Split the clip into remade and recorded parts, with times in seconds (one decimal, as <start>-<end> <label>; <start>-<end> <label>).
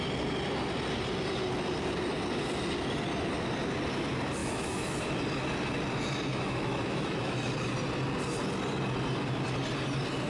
0.0-4.4 recorded; 4.4-5.0 remade; 5.0-6.3 recorded; 6.3-7.5 remade; 7.5-10.3 recorded